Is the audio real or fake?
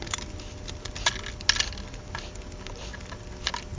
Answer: real